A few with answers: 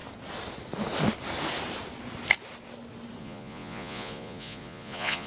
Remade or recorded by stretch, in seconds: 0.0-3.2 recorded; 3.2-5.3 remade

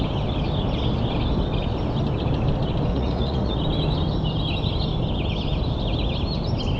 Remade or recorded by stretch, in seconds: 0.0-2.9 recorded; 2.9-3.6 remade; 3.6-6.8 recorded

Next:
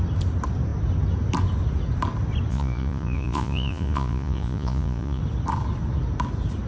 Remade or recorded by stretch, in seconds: 0.0-2.5 recorded; 2.5-5.2 remade; 5.2-6.7 recorded

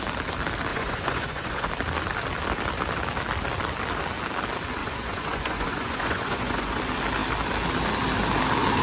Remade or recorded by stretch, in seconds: 0.0-0.7 recorded; 0.7-1.7 remade; 1.7-4.8 recorded; 4.8-6.8 remade; 6.8-8.8 recorded

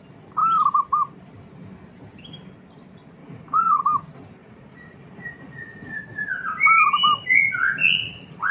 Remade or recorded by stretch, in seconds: 0.0-3.2 recorded; 3.2-3.8 remade; 3.8-4.4 recorded; 4.4-6.0 remade; 6.0-7.8 recorded; 7.8-8.5 remade

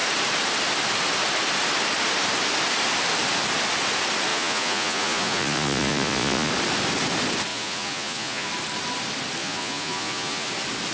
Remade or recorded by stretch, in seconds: 0.0-4.3 recorded; 4.3-6.5 remade; 6.5-7.5 recorded; 7.5-8.5 remade; 8.5-9.4 recorded; 9.4-10.5 remade; 10.5-10.9 recorded

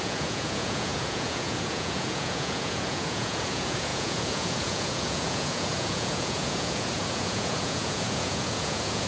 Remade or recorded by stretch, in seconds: 0.0-9.1 remade

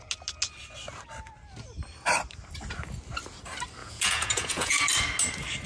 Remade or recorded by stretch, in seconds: 0.0-3.8 recorded; 3.8-4.8 remade; 4.8-5.7 recorded